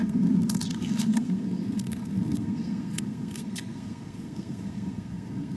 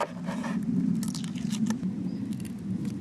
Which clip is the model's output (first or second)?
first